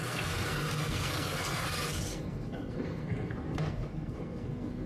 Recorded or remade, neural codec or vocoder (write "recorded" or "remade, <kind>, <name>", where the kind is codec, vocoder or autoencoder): remade, codec, SNAC